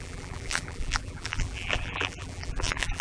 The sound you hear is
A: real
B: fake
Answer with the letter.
B